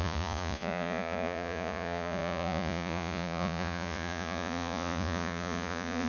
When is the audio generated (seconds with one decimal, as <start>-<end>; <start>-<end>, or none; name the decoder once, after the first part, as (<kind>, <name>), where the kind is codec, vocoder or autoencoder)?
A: 0.0-6.1 (vocoder, Vocos)